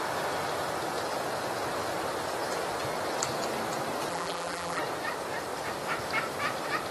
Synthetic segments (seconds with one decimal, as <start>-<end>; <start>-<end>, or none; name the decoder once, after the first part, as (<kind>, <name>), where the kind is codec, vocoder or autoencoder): 4.1-4.8 (vocoder, BigVGAN v2)